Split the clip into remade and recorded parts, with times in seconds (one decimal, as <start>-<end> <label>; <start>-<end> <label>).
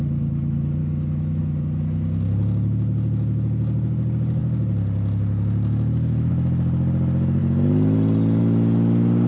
0.0-0.8 recorded; 0.8-1.4 remade; 1.4-9.3 recorded